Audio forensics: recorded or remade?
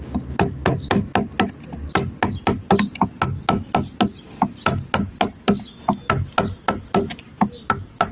recorded